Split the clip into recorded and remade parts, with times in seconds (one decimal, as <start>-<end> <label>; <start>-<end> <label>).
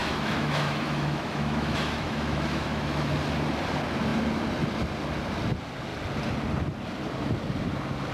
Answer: 0.0-3.1 remade; 3.1-8.1 recorded